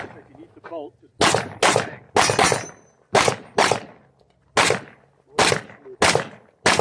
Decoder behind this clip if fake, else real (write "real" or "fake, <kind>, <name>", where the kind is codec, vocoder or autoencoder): real